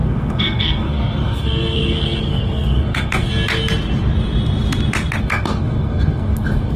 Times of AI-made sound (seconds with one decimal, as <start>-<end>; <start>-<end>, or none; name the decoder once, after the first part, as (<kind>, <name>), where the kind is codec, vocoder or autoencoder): 0.0-3.3 (codec, SNAC); 5.2-6.8